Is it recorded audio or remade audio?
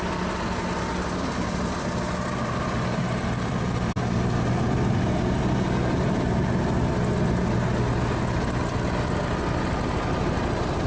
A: recorded